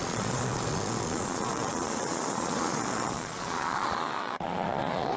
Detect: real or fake fake